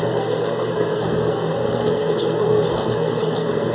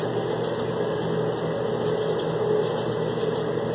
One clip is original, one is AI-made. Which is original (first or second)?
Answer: second